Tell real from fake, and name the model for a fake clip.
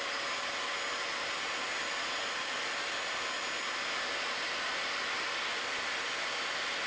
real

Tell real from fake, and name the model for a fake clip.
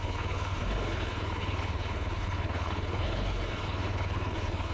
fake, codec, HILCodec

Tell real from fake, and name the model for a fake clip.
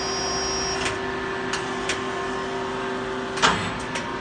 real